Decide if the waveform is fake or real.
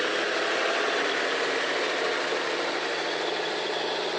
real